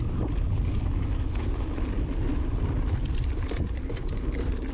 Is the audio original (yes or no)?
yes